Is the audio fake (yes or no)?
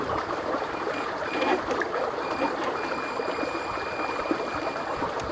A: yes